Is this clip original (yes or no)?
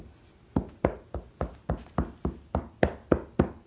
yes